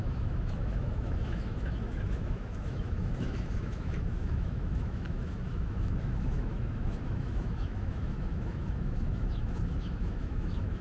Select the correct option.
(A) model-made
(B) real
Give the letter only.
A